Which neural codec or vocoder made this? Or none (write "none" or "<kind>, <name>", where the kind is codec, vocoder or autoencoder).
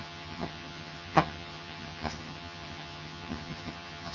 vocoder, HiFi-GAN